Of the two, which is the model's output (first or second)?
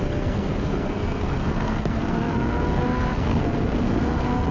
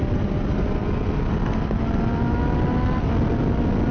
first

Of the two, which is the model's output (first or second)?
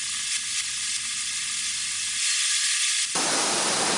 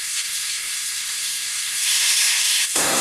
second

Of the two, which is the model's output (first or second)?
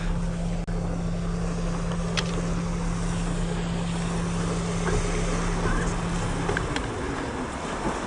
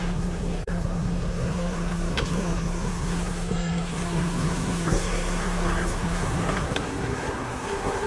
second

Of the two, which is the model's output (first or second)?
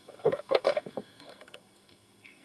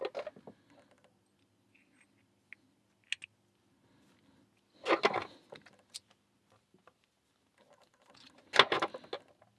first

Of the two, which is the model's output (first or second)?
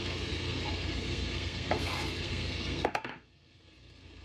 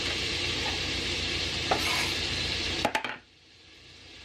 first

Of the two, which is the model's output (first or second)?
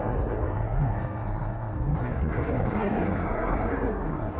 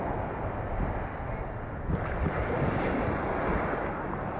first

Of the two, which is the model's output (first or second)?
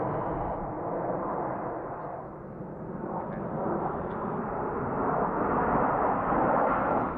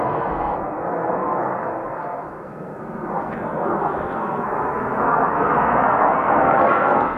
second